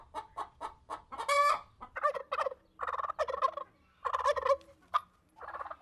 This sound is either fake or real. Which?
real